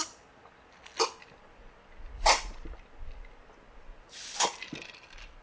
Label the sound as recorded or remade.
recorded